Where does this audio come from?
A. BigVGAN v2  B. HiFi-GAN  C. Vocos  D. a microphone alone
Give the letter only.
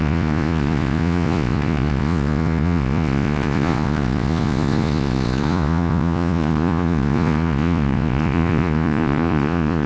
C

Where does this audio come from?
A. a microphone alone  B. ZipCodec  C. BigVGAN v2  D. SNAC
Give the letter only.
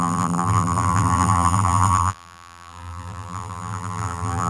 C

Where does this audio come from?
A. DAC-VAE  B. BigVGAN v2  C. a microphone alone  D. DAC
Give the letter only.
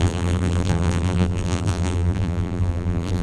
B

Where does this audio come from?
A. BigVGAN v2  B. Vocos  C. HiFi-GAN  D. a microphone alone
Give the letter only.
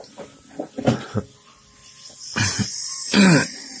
D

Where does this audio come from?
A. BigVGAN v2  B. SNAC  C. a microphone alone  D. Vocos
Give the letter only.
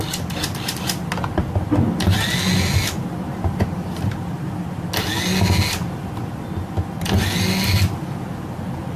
C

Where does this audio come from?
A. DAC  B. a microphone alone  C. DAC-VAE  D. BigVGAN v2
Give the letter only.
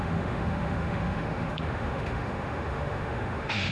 C